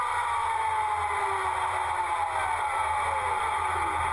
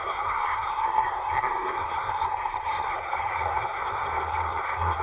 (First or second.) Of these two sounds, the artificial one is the second